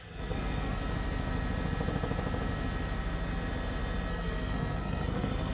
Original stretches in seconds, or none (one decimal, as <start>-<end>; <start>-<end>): 0.8-4.1